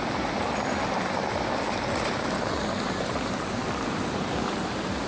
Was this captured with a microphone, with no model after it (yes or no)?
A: yes